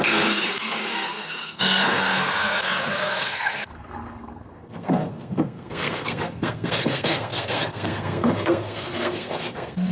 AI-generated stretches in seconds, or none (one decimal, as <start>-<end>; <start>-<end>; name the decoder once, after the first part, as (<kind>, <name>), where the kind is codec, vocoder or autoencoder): 0.0-9.9 (codec, SNAC)